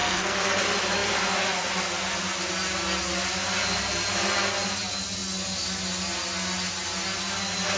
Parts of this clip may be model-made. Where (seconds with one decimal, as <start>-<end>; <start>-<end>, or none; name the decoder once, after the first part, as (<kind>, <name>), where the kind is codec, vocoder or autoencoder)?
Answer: 0.0-0.6 (codec, SNAC)